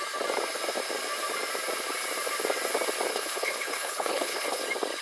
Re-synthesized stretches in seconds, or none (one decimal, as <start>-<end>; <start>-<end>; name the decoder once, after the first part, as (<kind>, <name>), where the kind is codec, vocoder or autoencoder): 3.1-4.6 (codec, HILCodec)